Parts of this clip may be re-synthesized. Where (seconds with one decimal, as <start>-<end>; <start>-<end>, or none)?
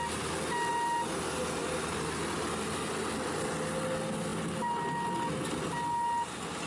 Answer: none